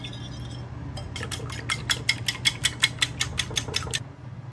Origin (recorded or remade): recorded